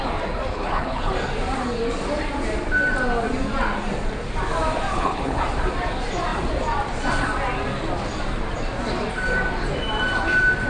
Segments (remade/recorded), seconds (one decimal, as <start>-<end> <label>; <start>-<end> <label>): 0.0-0.5 recorded; 0.5-1.1 remade; 1.1-4.9 recorded; 4.9-5.4 remade; 5.4-10.7 recorded